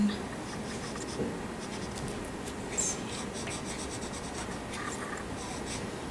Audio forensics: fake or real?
real